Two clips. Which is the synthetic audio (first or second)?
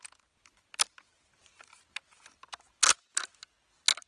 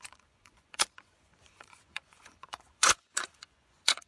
second